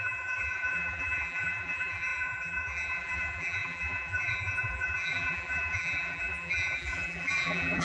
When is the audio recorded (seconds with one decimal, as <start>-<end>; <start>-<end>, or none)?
none